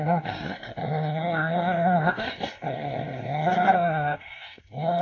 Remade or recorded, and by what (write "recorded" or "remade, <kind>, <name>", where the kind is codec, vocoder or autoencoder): remade, codec, SNAC